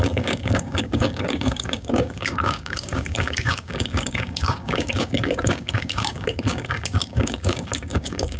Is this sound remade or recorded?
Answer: remade